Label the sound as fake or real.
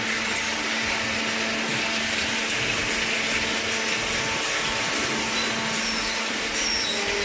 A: real